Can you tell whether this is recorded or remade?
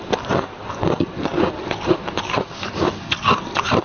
recorded